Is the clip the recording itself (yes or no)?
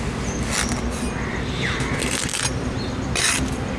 yes